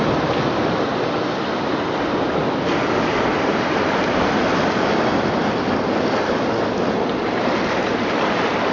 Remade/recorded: recorded